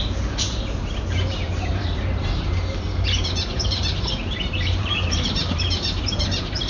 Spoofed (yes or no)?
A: yes